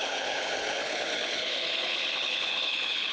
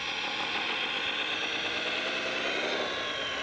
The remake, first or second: first